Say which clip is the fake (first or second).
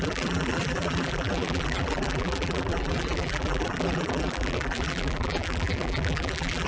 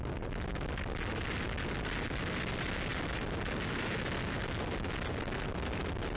first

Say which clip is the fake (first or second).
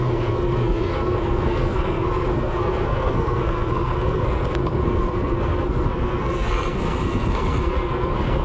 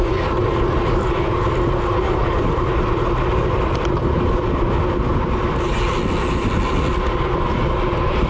first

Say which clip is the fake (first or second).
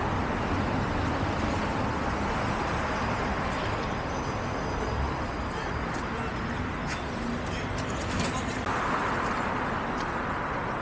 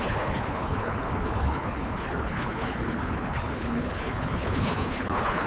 second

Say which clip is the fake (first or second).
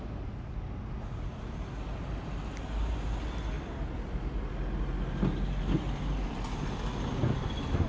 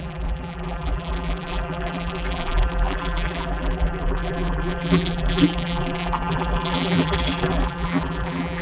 second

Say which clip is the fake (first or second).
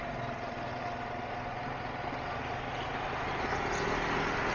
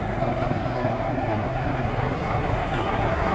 second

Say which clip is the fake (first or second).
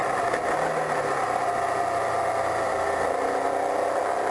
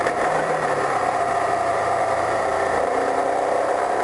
second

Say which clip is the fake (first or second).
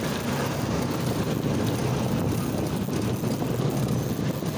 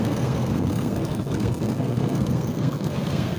second